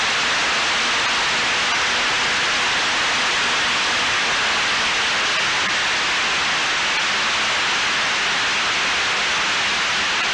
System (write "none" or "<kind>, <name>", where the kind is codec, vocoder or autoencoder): none